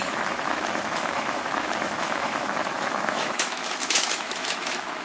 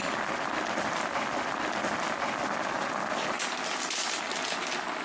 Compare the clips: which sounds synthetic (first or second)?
first